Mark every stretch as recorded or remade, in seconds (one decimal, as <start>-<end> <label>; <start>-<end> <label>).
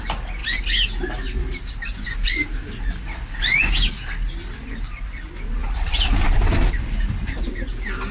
0.0-8.1 recorded